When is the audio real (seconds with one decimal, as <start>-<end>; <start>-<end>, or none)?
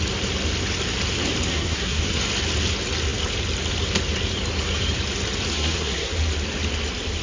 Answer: 0.0-1.5; 2.2-5.5; 6.1-7.2